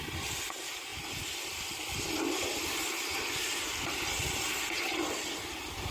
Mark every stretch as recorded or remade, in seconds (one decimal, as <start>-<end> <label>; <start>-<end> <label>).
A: 0.0-5.9 recorded